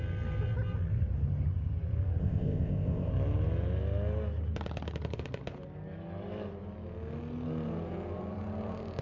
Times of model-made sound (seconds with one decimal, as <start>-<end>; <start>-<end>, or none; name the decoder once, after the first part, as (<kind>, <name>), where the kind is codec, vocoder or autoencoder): 2.2-3.1 (codec, ZipCodec)